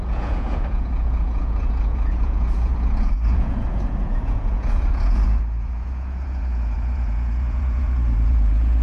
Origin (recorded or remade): remade